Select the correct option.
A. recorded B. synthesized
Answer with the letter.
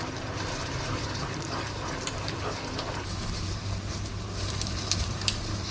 B